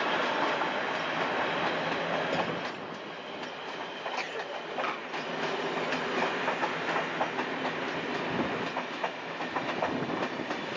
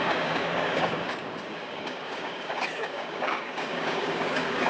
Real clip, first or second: first